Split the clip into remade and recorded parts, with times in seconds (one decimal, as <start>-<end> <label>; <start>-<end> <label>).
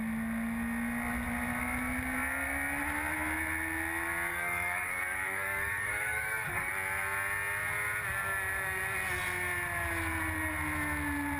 0.0-4.3 recorded; 4.3-6.7 remade; 6.7-11.4 recorded